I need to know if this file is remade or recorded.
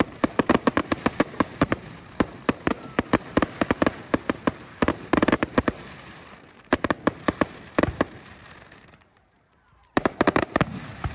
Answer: remade